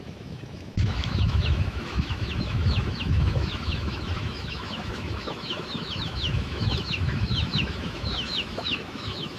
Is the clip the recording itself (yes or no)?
no